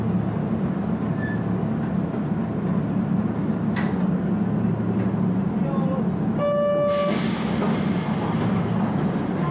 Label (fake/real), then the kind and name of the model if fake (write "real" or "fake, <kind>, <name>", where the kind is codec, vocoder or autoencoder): real